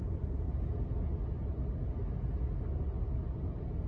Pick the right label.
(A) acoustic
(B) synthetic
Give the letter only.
A